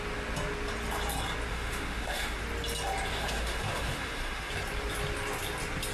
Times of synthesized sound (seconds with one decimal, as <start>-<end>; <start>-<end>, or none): 1.5-2.4; 3.1-4.5